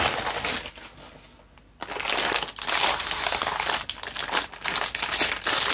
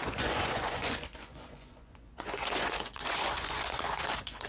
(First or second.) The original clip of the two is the first